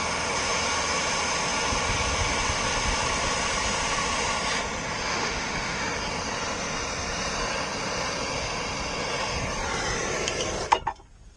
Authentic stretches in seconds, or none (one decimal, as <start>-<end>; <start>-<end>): 0.0-5.2; 5.8-11.4